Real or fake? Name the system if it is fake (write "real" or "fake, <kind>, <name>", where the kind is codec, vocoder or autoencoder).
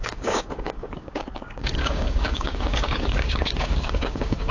fake, codec, DAC